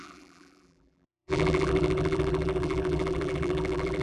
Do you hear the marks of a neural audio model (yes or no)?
yes